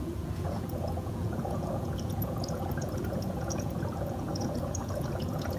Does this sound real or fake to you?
fake